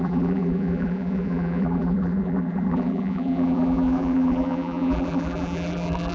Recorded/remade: remade